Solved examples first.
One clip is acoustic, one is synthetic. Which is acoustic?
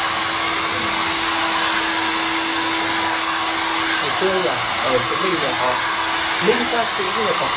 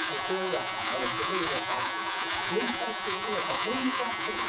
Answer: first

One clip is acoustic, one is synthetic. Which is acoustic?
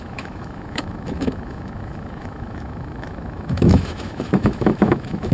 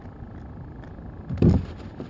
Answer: second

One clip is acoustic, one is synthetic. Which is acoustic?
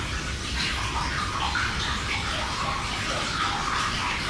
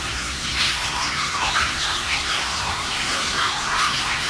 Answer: first